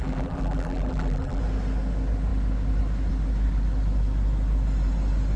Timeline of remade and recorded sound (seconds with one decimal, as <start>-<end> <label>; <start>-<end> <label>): 0.0-1.4 remade; 1.4-5.4 recorded